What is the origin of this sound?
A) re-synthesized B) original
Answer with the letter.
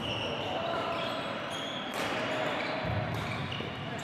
B